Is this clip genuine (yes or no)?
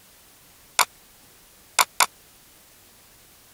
yes